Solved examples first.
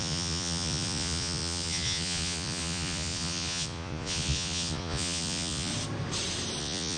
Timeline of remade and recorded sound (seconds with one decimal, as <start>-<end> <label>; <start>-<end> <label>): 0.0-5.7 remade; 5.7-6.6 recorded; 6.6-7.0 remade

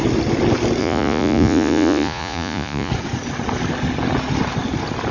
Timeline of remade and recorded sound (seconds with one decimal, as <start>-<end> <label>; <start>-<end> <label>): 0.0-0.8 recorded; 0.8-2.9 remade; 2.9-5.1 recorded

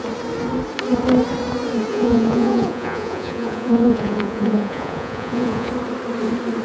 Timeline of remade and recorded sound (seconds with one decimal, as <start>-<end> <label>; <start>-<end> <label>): 0.0-1.9 recorded; 1.9-5.7 remade; 5.7-6.6 recorded

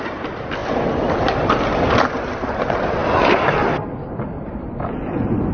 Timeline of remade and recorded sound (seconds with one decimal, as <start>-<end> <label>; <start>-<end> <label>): 0.0-5.5 recorded

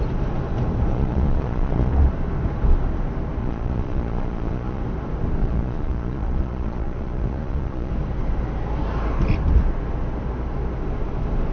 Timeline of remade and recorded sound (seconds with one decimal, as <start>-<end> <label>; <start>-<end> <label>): 0.0-0.9 recorded; 0.9-1.9 remade; 1.9-3.4 recorded; 3.4-4.8 remade; 4.8-5.4 recorded; 5.4-7.9 remade; 7.9-11.5 recorded

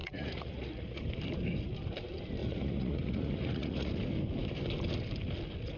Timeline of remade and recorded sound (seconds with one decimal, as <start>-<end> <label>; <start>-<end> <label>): 0.0-1.0 remade; 1.0-2.4 recorded; 2.4-3.9 remade; 3.9-5.8 recorded

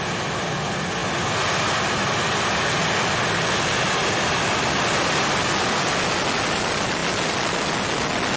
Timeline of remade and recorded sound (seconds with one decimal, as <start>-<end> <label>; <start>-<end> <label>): 0.0-8.4 recorded